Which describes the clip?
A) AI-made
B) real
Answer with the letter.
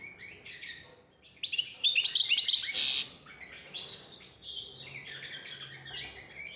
B